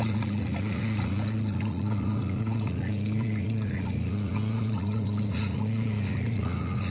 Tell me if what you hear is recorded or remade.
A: remade